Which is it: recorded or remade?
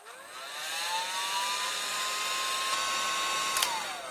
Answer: recorded